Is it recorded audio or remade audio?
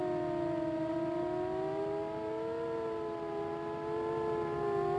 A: recorded